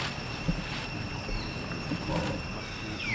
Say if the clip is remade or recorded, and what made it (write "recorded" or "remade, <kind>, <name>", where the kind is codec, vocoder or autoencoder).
recorded